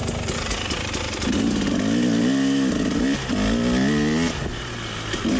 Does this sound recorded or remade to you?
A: recorded